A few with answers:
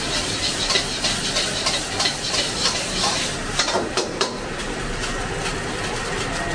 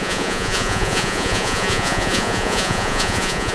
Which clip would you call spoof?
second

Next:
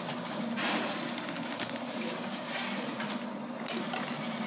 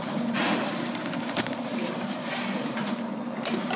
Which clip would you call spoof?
second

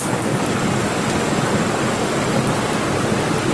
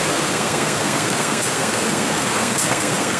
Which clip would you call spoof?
second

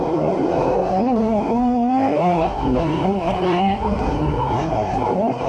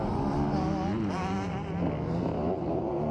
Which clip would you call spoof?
first